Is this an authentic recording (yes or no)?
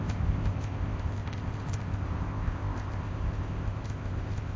no